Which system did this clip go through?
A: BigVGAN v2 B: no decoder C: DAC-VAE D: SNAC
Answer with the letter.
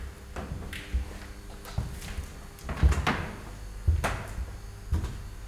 B